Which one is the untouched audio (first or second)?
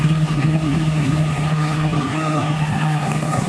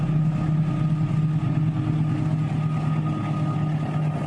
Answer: second